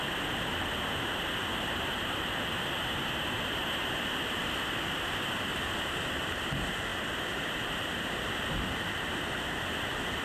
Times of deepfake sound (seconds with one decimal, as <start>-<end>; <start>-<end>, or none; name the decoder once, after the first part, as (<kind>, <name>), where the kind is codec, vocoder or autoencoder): none